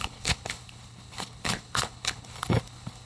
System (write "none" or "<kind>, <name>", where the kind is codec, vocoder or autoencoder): codec, HILCodec